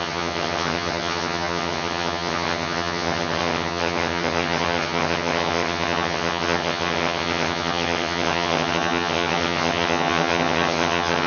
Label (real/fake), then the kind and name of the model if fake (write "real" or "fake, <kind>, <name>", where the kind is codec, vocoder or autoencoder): fake, vocoder, HiFi-GAN